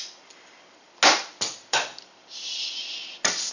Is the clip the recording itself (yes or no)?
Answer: yes